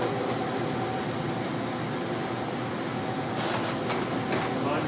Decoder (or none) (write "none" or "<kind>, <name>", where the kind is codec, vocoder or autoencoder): none